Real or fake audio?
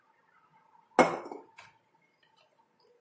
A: real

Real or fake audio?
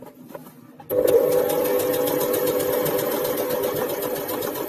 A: real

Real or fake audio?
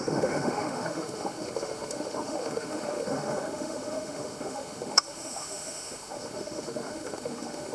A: fake